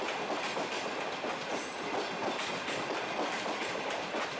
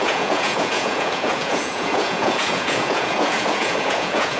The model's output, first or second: second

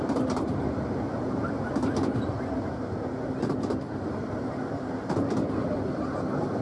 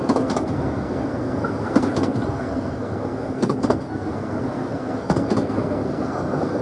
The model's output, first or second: second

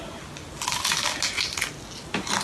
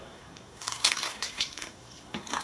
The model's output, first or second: second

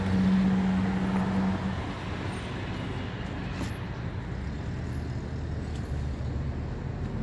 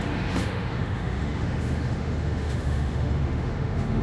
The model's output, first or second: second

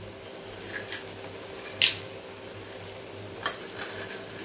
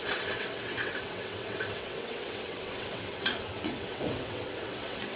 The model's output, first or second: second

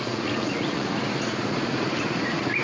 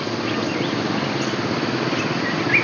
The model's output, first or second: first